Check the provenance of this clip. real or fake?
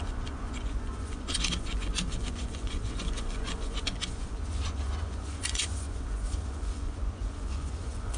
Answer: fake